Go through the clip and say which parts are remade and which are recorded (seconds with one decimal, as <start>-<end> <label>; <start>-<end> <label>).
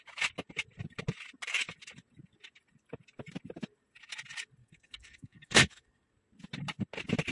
0.0-4.6 recorded; 4.6-6.1 remade; 6.1-7.3 recorded